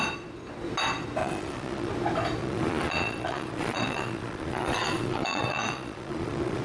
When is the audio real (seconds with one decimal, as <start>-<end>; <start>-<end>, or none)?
0.0-1.2; 1.9-2.4